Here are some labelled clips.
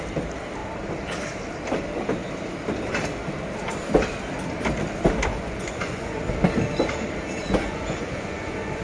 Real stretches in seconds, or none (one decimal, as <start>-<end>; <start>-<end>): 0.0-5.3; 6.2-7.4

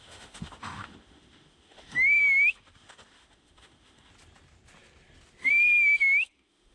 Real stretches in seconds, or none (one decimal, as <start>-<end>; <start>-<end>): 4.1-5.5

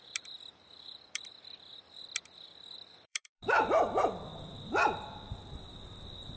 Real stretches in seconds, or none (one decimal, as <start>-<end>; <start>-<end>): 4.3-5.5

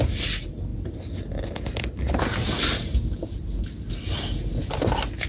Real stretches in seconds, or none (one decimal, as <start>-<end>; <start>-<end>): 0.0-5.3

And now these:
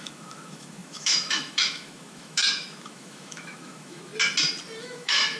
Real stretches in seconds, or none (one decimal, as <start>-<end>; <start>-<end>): 4.1-4.8